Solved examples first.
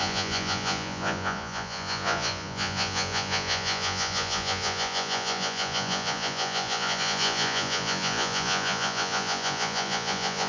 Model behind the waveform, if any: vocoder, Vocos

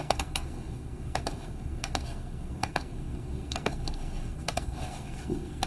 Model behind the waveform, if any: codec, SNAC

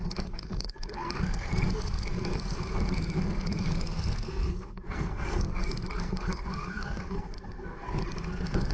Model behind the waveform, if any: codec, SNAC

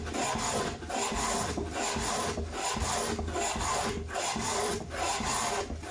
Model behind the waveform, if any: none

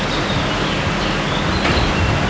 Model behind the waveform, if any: none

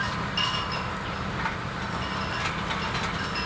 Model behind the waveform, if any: none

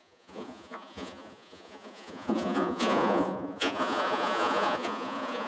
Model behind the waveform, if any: vocoder, Vocos